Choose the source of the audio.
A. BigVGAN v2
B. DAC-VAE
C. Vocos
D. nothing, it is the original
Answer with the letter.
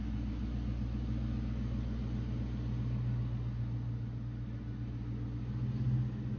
D